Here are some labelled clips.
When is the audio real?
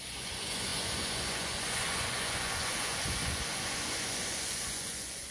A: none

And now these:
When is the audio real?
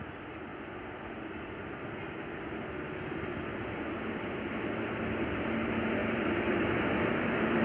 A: 0.0-3.5; 4.6-6.0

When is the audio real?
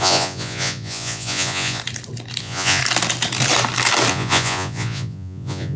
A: 1.8-2.4; 2.8-4.1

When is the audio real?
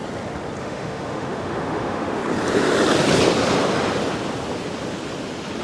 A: 0.0-0.6; 2.2-5.6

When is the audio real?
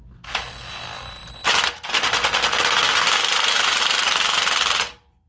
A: 0.0-5.3